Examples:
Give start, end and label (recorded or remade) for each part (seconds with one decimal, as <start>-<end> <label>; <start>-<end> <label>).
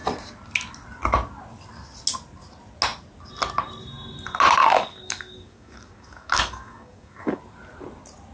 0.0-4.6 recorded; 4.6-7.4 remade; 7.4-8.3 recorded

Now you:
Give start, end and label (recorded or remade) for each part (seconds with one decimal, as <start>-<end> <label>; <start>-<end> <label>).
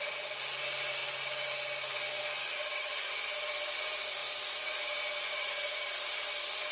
0.0-2.4 recorded; 2.4-3.1 remade; 3.1-6.7 recorded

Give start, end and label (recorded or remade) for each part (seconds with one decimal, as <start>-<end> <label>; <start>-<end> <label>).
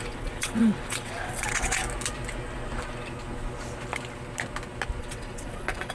0.0-1.8 remade; 1.8-5.0 recorded; 5.0-5.9 remade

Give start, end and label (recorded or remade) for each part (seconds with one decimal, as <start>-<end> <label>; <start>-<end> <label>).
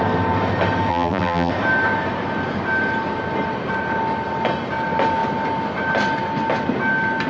0.0-0.9 recorded; 0.9-1.5 remade; 1.5-7.3 recorded